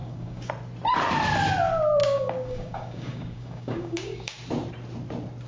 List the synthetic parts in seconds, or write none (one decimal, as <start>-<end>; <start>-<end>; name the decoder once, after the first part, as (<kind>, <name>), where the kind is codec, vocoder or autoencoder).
0.0-0.5 (codec, DAC); 2.0-4.4

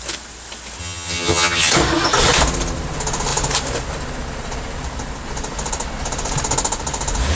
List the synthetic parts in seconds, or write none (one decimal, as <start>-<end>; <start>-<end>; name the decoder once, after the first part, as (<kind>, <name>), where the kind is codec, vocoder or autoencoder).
0.8-1.7 (vocoder, HiFi-GAN)

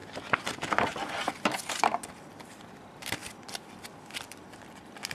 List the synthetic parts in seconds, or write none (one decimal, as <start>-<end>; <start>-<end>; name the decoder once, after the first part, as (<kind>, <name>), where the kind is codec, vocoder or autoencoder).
2.5-3.2 (vocoder, BigVGAN v2); 4.0-5.1

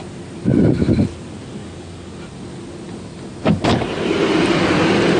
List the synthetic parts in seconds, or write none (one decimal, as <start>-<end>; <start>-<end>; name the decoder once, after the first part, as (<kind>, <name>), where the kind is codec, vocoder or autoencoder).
1.6-2.2 (codec, DAC)

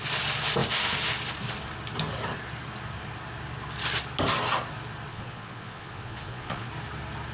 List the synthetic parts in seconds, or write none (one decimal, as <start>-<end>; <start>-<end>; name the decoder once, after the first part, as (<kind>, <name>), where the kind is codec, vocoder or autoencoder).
5.1-6.7 (vocoder, Vocos)